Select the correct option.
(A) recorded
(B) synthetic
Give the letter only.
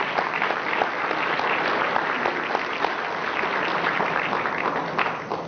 A